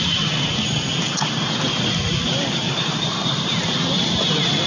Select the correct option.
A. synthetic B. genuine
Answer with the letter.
B